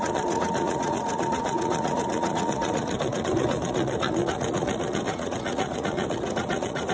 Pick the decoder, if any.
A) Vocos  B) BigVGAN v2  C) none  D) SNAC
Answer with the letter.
A